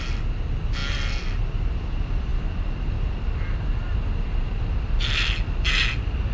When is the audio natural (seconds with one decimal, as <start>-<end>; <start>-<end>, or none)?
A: 0.0-6.3